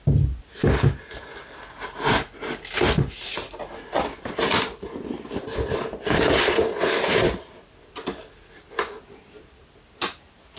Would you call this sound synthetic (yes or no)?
no